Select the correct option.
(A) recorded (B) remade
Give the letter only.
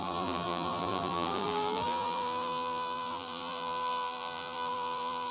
B